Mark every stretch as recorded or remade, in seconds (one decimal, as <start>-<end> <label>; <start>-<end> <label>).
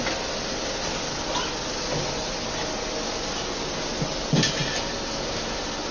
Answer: 0.0-5.9 recorded